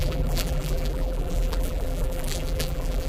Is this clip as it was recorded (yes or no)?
no